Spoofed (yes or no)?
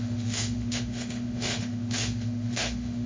yes